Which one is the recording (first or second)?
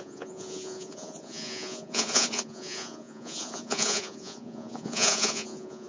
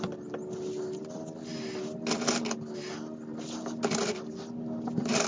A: second